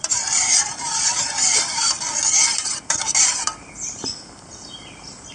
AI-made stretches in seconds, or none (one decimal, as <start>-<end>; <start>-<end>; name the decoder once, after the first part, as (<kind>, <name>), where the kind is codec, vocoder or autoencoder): 0.0-5.3 (vocoder, BigVGAN v2)